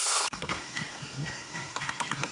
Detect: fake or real fake